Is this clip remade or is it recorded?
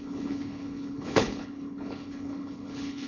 remade